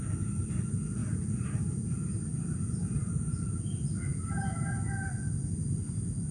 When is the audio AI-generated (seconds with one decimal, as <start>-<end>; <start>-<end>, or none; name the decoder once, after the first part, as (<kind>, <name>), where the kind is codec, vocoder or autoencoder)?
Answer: 1.0-3.2 (vocoder, BigVGAN v2); 4.1-4.9